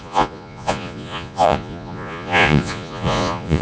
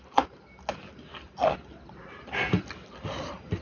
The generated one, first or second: first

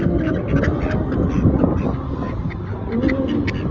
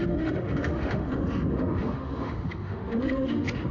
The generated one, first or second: second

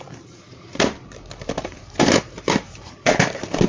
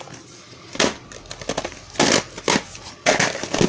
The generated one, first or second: first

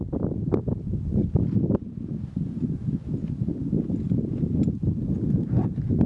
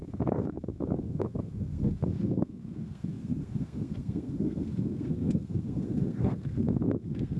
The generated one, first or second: second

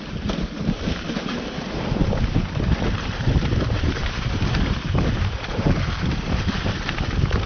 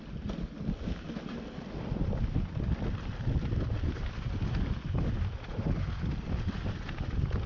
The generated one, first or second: first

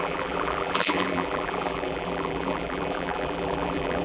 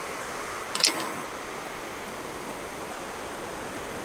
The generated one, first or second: first